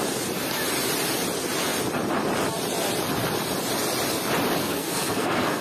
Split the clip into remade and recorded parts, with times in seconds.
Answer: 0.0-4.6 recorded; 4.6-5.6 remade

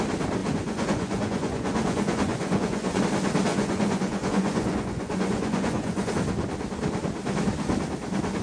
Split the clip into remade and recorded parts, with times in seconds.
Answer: 0.0-0.4 recorded; 0.4-3.0 remade; 3.0-3.5 recorded; 3.5-6.1 remade; 6.1-8.4 recorded

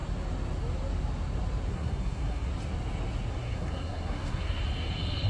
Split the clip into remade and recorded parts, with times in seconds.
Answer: 0.0-1.7 recorded; 1.7-2.5 remade; 2.5-3.3 recorded; 3.3-4.6 remade; 4.6-5.3 recorded

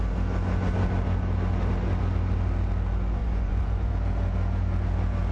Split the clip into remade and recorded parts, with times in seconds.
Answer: 0.0-3.2 recorded; 3.2-3.9 remade; 3.9-5.3 recorded

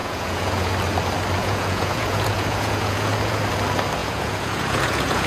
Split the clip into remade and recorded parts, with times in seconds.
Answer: 0.0-0.7 remade; 0.7-1.4 recorded; 1.4-3.4 remade; 3.4-4.0 recorded; 4.0-5.3 remade